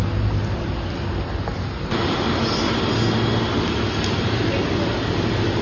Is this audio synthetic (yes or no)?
no